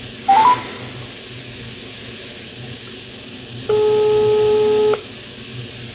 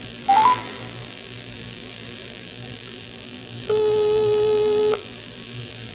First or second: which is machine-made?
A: second